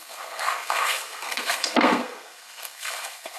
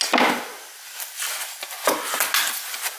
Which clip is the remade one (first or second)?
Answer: first